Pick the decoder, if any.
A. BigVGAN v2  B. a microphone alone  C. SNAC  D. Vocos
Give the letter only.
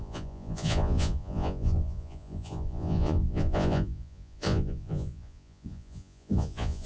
D